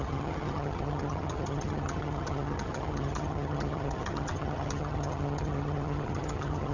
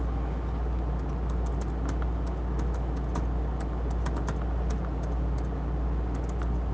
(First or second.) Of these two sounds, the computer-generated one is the first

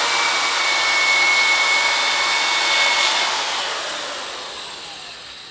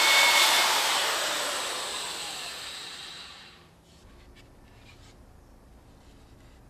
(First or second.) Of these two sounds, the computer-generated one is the second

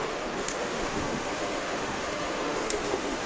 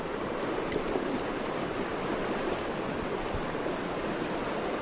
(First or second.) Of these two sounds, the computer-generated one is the first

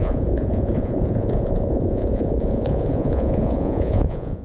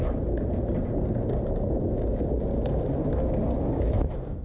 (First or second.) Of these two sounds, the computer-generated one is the first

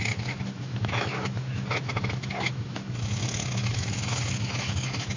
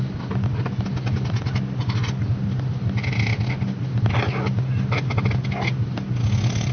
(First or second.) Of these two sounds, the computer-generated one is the first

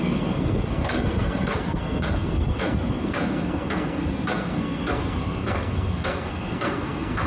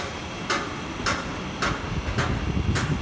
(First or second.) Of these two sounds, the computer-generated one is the first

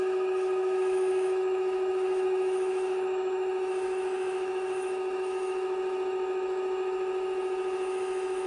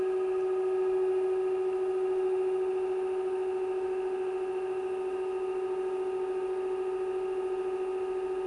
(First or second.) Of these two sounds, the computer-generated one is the first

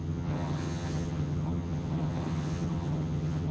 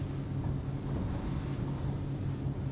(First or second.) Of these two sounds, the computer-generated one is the first